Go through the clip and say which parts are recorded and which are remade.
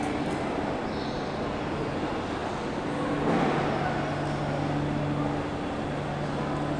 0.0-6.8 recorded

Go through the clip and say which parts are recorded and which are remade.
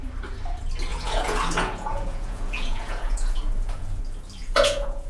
0.0-0.9 recorded; 0.9-4.0 remade; 4.0-4.4 recorded; 4.4-5.1 remade